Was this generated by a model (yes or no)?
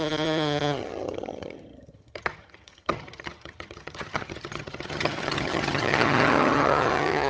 yes